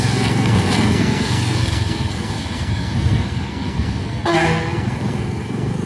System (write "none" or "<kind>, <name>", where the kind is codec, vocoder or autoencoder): codec, SNAC